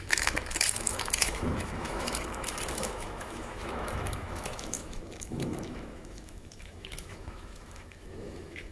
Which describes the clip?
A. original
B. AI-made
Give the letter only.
B